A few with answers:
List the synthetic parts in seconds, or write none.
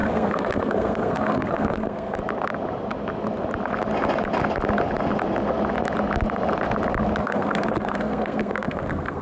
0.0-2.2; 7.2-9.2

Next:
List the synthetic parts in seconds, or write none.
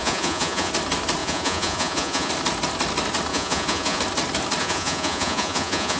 0.0-0.7; 1.2-2.3; 3.3-4.0; 4.6-6.0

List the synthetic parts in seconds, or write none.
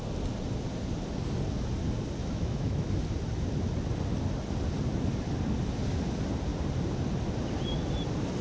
2.2-2.9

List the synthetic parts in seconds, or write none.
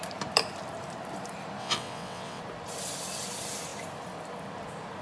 1.6-2.4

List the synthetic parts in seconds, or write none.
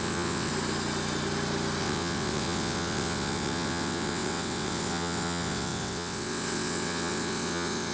0.0-0.5; 1.8-7.9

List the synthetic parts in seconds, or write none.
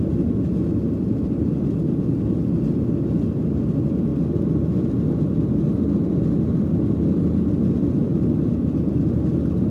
none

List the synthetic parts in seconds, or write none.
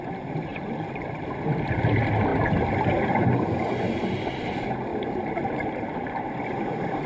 0.5-1.3; 4.9-6.3